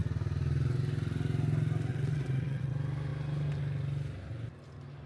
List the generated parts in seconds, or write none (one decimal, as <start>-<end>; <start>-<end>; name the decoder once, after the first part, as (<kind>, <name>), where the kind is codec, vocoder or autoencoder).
1.9-2.7 (vocoder, WaveNeXt)